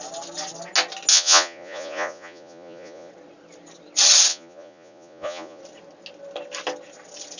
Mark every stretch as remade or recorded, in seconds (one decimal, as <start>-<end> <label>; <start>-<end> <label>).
0.0-1.1 recorded; 1.1-3.1 remade; 3.1-4.3 recorded; 4.3-5.6 remade; 5.6-7.4 recorded